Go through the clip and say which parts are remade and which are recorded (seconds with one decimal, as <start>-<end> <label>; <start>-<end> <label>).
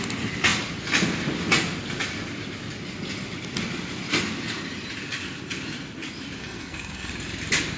0.0-6.4 recorded; 6.4-7.1 remade; 7.1-7.8 recorded